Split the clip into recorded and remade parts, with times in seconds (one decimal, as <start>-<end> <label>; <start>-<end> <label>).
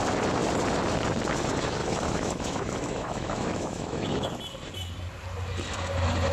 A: 0.0-1.8 recorded; 1.8-4.4 remade; 4.4-6.3 recorded